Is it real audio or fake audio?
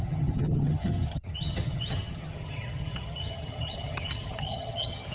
fake